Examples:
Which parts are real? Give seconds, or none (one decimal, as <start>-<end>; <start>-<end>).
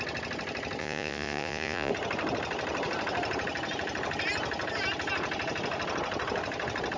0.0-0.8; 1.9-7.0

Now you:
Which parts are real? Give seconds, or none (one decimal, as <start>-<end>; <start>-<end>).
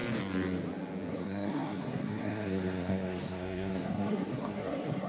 0.0-1.1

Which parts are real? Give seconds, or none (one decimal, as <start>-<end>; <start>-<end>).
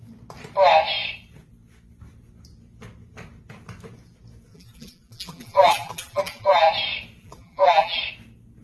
0.0-4.5; 6.7-7.2; 8.0-8.6